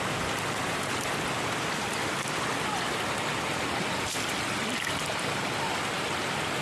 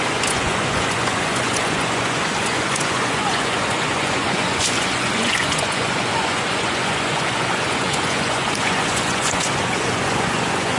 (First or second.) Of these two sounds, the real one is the first